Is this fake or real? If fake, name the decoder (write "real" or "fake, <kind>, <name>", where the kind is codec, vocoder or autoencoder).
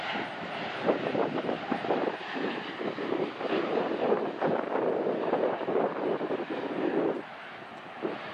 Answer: real